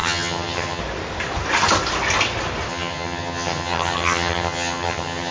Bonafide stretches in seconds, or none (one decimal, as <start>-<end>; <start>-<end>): 0.8-2.7